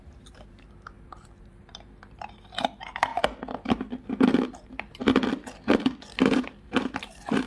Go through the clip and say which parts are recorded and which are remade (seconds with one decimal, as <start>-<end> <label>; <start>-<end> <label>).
0.0-3.1 remade; 3.1-3.7 recorded; 3.7-5.0 remade; 5.0-6.0 recorded; 6.0-7.5 remade